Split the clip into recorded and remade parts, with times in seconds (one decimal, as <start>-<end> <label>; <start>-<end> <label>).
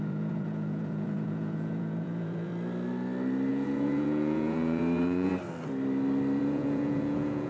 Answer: 0.0-2.5 remade; 2.5-3.5 recorded; 3.5-5.3 remade; 5.3-6.4 recorded; 6.4-7.5 remade